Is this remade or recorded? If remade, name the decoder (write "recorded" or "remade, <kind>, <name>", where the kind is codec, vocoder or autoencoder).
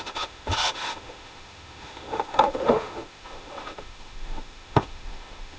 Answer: remade, autoencoder, DAC-VAE